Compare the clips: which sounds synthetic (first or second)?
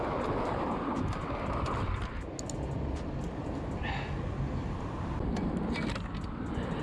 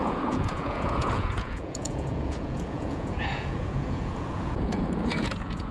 second